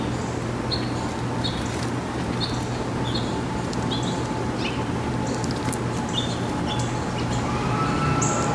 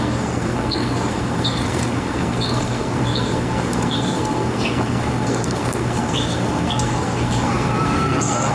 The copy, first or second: second